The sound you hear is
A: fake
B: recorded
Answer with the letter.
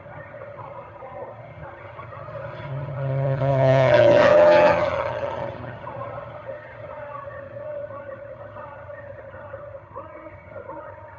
A